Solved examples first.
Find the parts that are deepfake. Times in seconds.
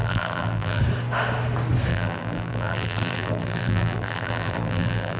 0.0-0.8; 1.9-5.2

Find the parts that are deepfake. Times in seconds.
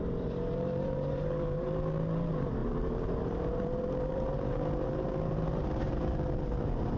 0.0-7.0